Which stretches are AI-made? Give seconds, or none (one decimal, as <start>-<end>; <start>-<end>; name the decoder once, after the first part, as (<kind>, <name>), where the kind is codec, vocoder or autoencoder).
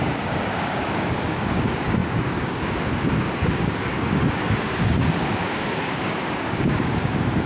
0.0-7.5 (codec, DAC)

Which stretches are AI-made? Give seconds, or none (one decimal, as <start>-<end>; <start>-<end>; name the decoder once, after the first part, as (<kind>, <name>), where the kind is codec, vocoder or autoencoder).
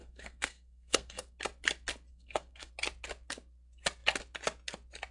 0.0-1.4 (codec, SNAC); 2.1-2.7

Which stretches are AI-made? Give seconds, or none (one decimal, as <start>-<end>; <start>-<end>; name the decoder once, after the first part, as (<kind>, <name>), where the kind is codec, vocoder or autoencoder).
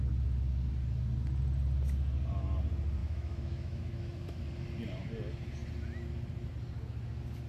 3.0-4.4 (autoencoder, DAC-VAE)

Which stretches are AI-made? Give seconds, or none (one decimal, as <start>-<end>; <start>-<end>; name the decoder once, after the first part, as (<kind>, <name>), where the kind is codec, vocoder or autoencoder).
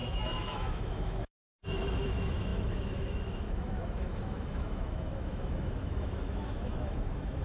0.0-7.4 (autoencoder, DAC-VAE)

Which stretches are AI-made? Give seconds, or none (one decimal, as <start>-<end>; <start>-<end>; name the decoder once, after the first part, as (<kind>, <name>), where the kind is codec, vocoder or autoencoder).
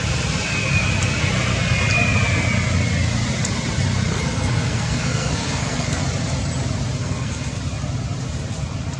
4.1-6.0 (codec, SNAC); 7.0-7.6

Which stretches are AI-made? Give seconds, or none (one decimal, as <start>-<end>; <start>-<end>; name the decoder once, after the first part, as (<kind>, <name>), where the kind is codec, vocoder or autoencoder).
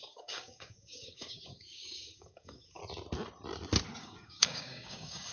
0.0-2.8 (codec, DAC); 4.0-5.3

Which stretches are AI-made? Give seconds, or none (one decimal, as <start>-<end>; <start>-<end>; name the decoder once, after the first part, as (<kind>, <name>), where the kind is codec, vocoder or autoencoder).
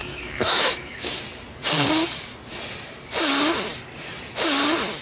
0.0-1.2 (autoencoder, DAC-VAE)